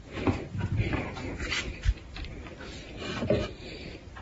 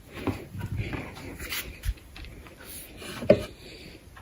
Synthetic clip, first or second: first